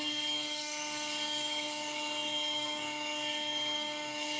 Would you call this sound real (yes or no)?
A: no